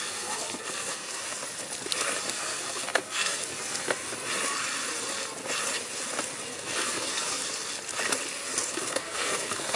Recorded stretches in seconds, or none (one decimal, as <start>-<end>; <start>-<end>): 1.4-2.3; 4.1-6.5; 7.4-8.7